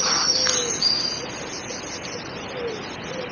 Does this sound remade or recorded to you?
recorded